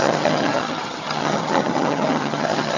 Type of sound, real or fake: fake